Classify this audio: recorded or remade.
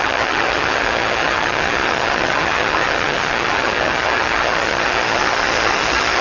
remade